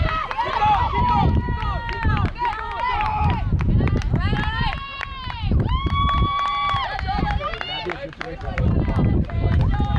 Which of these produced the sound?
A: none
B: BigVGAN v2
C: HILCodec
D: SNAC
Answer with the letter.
B